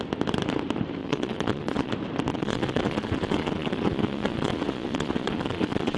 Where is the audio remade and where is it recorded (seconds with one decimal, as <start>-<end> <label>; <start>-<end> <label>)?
0.0-1.0 recorded; 1.0-1.9 remade; 1.9-2.3 recorded; 2.3-6.0 remade

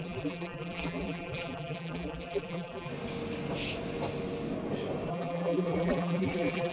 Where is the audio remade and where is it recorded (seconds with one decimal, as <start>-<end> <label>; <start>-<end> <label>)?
0.0-2.9 remade; 2.9-5.1 recorded; 5.1-6.7 remade

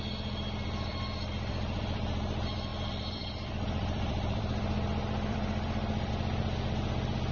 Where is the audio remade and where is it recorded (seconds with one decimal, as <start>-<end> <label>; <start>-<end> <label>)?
0.0-0.9 recorded; 0.9-2.0 remade; 2.0-2.7 recorded; 2.7-6.1 remade; 6.1-7.3 recorded